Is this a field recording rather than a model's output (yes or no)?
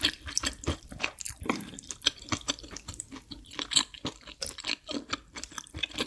no